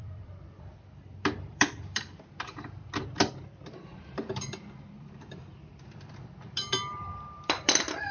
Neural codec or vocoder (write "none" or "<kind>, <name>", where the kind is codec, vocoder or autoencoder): vocoder, BigVGAN v2